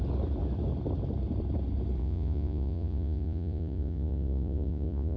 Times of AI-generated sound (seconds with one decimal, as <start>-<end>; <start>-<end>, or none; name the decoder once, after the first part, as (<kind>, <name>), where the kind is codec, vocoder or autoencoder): 2.0-5.2 (vocoder, Vocos)